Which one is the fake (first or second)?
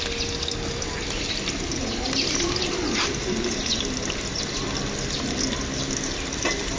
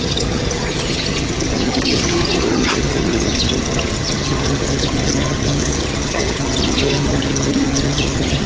second